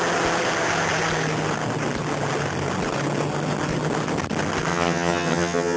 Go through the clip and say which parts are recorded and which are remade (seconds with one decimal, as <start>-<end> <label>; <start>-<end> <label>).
0.0-4.7 recorded; 4.7-5.8 remade